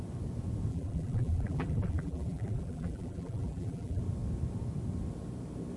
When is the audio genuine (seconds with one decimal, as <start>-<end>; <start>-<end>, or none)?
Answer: 0.0-0.7; 4.0-5.8